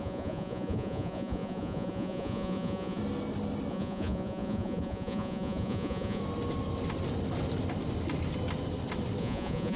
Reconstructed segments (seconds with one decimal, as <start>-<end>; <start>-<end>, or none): 0.0-3.0; 3.7-6.2; 9.2-9.8